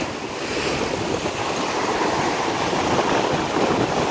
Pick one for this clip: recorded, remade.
recorded